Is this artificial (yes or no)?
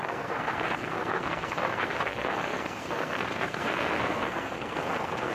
yes